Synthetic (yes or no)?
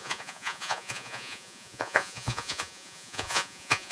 yes